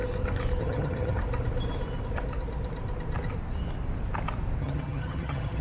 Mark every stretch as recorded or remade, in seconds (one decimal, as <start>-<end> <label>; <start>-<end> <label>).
0.0-0.6 recorded; 0.6-1.2 remade; 1.2-4.6 recorded; 4.6-5.6 remade